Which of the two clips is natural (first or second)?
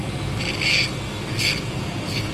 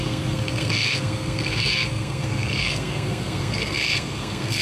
first